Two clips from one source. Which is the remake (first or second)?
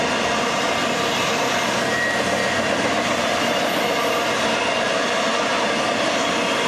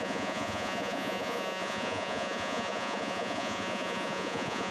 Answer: second